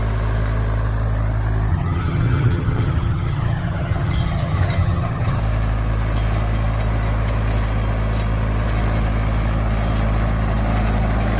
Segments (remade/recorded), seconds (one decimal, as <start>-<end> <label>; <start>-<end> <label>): 0.0-1.7 recorded; 1.7-5.4 remade; 5.4-11.4 recorded